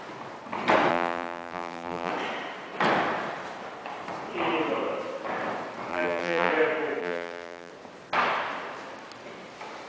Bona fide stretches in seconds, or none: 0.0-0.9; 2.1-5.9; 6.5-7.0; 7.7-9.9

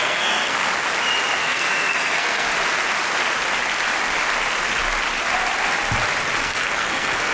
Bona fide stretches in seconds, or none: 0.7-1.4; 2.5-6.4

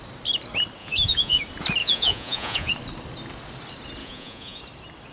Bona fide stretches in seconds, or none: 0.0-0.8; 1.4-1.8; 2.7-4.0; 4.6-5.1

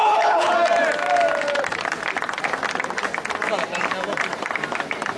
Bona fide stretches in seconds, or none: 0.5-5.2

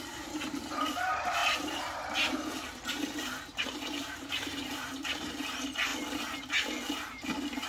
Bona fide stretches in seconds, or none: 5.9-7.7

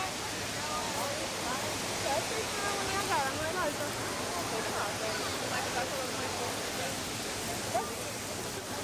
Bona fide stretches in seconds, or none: 0.0-8.8